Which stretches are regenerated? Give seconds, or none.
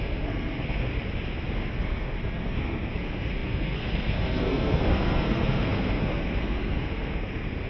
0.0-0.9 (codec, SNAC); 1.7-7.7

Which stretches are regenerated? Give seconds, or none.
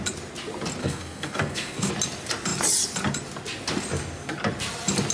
0.8-1.9 (codec, SNAC)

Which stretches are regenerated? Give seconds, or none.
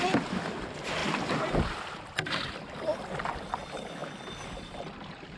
none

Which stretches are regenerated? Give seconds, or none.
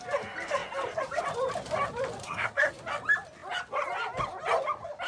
2.2-2.7 (codec, SNAC)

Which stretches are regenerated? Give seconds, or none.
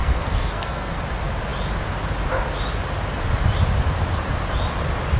0.0-1.0 (codec, SNAC)